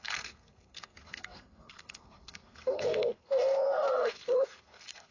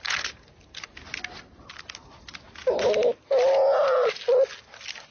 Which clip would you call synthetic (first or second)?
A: first